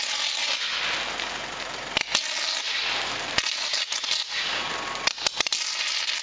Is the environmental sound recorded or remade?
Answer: recorded